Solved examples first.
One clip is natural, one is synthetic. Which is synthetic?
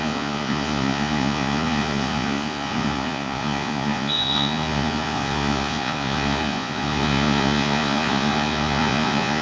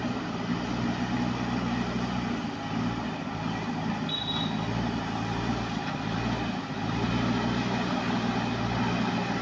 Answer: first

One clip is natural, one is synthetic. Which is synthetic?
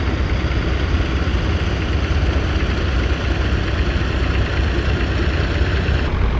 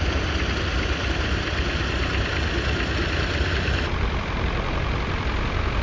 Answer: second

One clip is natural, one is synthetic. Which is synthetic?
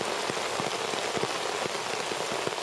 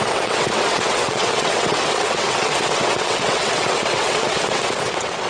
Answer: second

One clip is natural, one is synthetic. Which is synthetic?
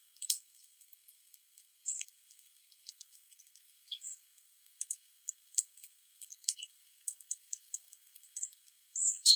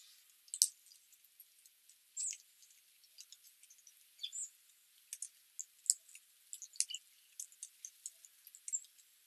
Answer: first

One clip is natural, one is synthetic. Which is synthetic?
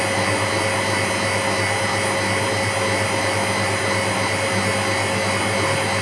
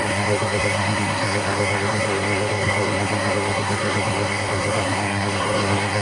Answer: second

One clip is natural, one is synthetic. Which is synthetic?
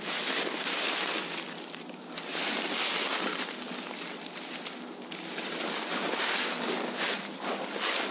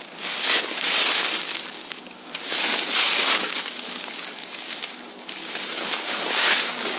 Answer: second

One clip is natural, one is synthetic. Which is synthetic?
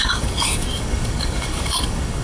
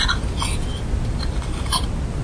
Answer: first